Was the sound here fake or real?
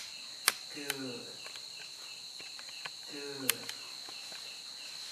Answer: real